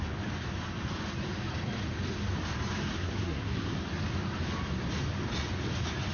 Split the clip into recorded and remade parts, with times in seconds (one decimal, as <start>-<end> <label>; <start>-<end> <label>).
0.0-2.9 recorded; 2.9-3.8 remade; 3.8-6.1 recorded